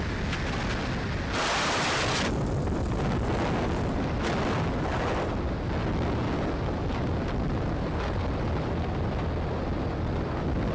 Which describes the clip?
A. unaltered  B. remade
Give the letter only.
A